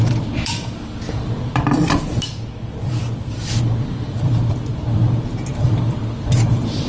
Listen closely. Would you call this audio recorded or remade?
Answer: remade